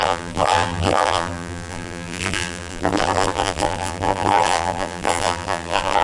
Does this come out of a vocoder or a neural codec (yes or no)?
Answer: yes